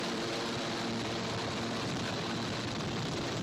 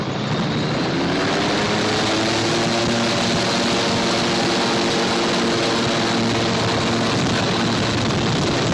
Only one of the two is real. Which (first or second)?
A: second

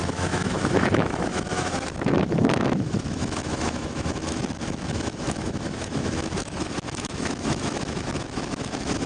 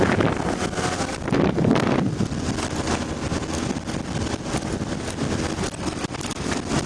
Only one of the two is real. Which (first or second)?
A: second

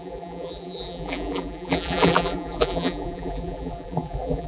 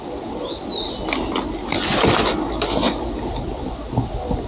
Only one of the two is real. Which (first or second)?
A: second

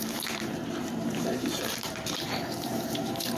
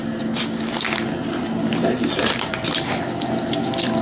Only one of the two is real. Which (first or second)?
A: second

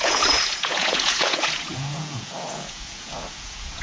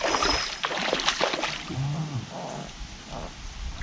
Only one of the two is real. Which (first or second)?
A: second